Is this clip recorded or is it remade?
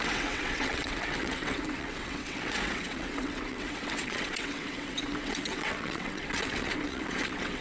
remade